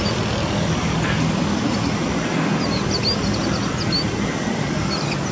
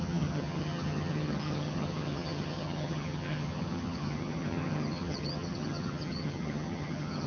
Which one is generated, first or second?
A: second